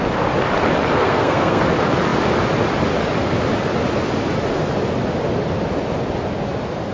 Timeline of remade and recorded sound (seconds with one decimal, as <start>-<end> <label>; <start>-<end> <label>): 0.0-0.9 recorded; 0.9-1.6 remade; 1.6-6.9 recorded